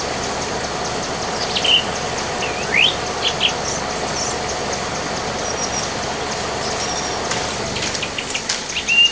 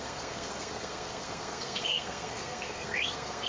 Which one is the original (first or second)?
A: first